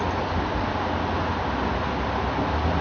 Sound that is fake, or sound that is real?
real